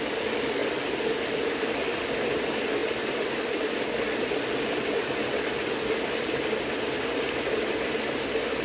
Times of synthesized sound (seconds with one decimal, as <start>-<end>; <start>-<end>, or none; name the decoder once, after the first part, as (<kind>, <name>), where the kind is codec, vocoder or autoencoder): none